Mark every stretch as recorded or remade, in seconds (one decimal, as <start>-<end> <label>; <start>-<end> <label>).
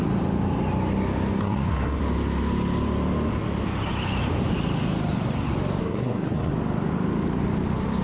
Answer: 0.0-1.4 recorded; 1.4-2.0 remade; 2.0-5.8 recorded; 5.8-6.5 remade; 6.5-8.0 recorded